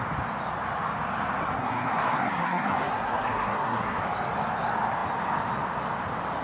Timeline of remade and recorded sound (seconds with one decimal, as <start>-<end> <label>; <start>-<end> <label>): 0.0-1.4 recorded; 1.4-4.0 remade; 4.0-6.4 recorded